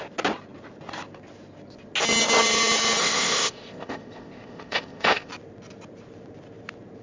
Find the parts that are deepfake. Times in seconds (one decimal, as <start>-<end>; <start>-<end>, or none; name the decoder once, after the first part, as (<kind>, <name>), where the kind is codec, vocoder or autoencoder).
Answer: 3.0-5.3 (codec, ZipCodec)